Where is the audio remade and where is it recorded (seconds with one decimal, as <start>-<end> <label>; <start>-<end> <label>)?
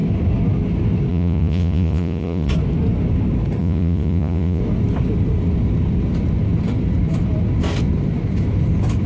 0.0-1.1 recorded; 1.1-2.5 remade; 2.5-3.6 recorded; 3.6-4.6 remade; 4.6-9.1 recorded